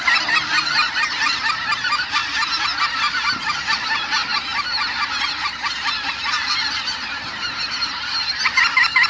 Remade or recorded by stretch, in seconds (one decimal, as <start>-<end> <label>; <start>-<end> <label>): 0.0-2.2 remade; 2.2-2.8 recorded; 2.8-9.1 remade